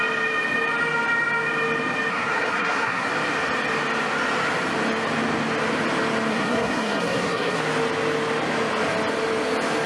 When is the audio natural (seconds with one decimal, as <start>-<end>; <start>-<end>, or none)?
0.0-2.1; 3.1-6.3; 7.6-9.9